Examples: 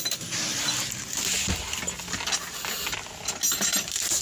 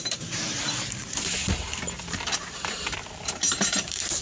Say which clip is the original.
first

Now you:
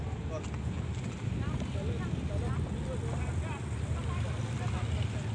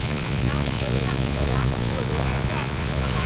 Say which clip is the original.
first